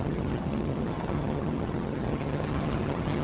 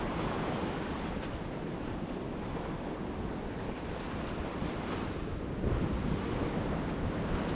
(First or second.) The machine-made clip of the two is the first